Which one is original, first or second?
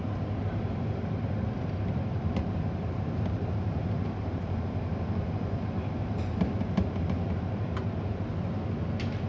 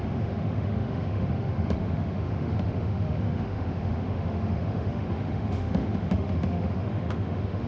first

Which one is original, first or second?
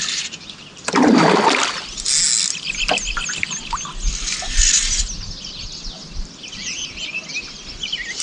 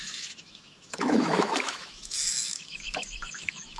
first